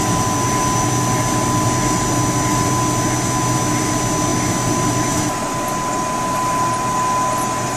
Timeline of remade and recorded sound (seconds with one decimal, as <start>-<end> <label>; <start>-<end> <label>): 0.0-7.8 recorded